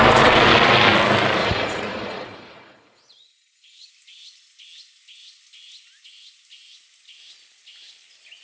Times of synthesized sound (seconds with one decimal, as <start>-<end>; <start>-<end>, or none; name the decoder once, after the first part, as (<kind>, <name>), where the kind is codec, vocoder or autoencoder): 1.4-3.9 (vocoder, Vocos)